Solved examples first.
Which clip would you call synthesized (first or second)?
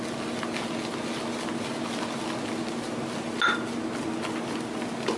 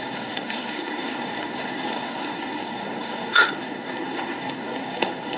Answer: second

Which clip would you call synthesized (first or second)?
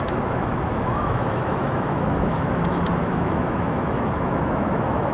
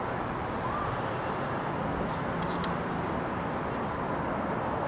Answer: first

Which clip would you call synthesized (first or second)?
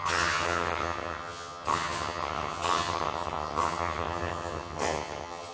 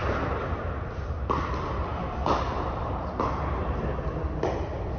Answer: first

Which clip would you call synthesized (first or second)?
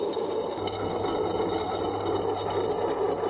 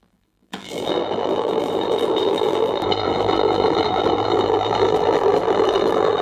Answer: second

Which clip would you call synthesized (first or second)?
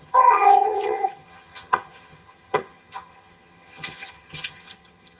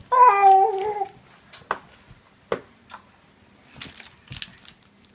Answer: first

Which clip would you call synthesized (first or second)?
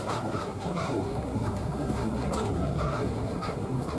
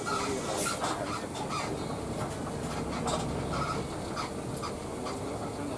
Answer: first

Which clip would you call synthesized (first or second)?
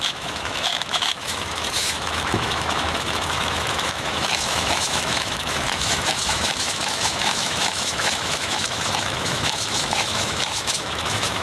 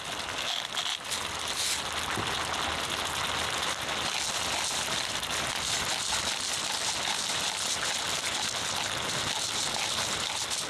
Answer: first